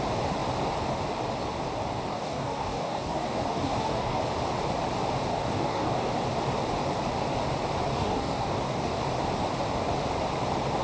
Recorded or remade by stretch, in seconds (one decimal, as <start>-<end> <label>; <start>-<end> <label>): 0.0-2.1 recorded; 2.1-4.2 remade; 4.2-5.3 recorded; 5.3-6.1 remade; 6.1-7.9 recorded; 7.9-9.0 remade; 9.0-10.8 recorded